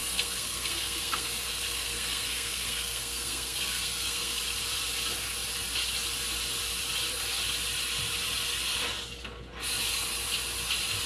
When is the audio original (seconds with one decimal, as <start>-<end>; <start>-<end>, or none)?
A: 4.4-11.1